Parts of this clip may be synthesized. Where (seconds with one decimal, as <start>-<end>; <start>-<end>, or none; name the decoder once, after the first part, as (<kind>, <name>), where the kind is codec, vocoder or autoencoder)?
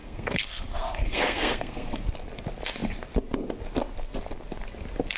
0.0-2.0 (codec, SNAC)